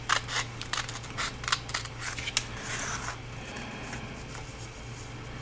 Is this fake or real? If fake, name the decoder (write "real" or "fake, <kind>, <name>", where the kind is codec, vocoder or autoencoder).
real